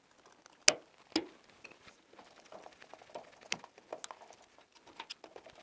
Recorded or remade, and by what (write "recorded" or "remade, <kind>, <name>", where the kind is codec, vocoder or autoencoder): recorded